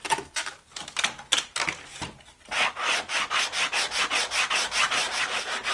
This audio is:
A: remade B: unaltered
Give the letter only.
B